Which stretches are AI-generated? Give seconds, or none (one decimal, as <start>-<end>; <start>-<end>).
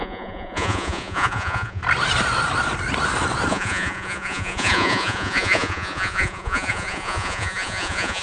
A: 0.0-1.8; 3.5-8.2